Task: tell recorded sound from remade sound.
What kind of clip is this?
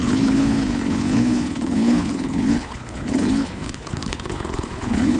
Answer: remade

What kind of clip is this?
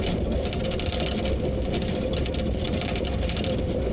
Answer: recorded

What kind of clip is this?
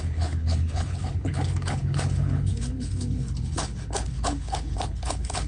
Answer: remade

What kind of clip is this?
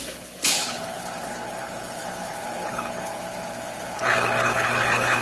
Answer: remade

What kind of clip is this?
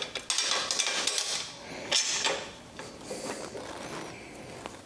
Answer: recorded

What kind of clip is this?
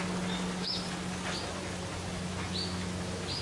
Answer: recorded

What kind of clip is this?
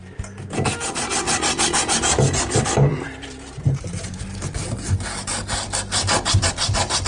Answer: recorded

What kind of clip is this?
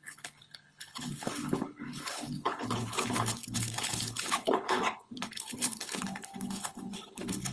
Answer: remade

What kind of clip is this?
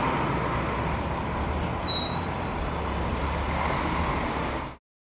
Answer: recorded